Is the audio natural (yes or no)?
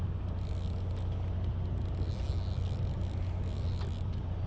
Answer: yes